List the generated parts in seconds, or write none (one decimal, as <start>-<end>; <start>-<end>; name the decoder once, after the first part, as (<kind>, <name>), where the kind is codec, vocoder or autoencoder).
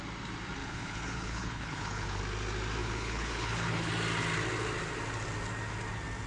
0.6-2.2 (codec, HILCodec); 2.8-3.9